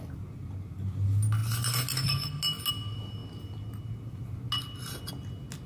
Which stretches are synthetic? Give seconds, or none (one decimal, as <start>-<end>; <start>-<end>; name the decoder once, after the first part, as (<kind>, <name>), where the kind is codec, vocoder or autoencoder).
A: none